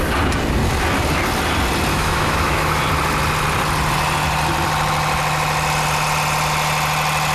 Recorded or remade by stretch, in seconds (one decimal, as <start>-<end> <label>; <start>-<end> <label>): 0.0-1.9 recorded; 1.9-2.8 remade; 2.8-7.3 recorded